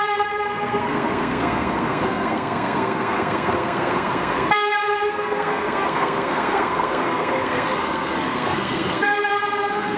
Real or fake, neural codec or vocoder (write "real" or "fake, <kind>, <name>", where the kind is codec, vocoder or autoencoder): fake, codec, SNAC